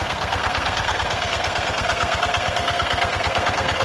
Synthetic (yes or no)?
yes